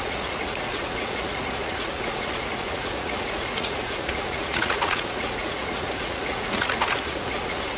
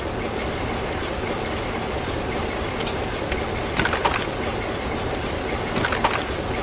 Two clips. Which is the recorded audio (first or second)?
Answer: second